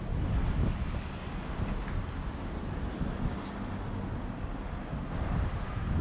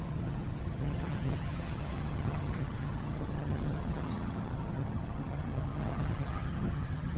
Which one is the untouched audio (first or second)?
first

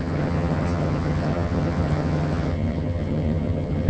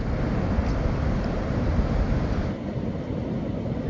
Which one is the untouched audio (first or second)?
second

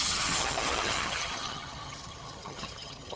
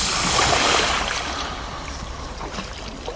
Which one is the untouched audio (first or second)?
second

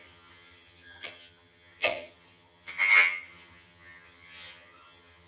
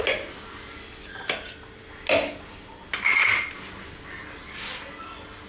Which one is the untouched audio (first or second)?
second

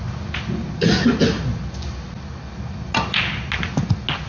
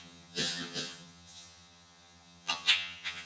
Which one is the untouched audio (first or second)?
first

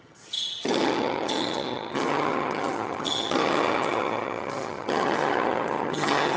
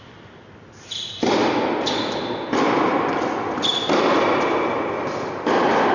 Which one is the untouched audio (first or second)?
second